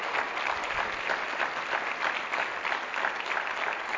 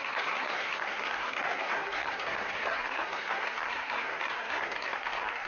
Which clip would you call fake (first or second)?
second